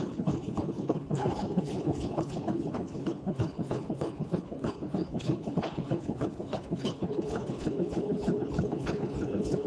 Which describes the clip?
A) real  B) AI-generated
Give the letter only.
B